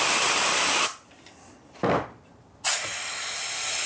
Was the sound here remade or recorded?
remade